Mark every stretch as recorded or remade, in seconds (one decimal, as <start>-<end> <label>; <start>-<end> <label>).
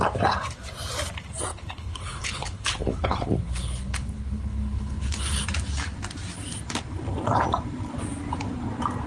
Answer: 0.0-1.5 recorded; 1.5-5.4 remade; 5.4-9.1 recorded